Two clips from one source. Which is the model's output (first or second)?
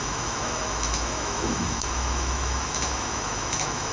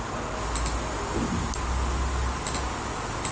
first